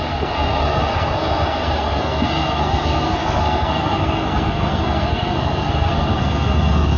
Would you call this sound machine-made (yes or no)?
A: yes